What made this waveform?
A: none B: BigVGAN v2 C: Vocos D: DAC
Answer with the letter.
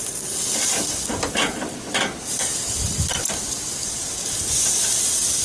A